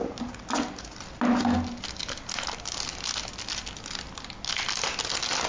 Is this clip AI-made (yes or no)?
no